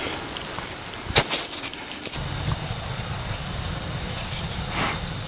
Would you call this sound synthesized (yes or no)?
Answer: no